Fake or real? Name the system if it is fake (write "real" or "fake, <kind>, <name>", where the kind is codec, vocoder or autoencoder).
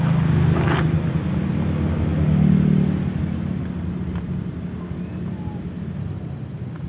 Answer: real